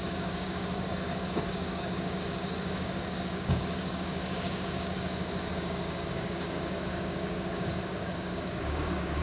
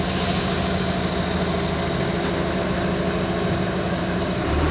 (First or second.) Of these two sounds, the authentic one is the second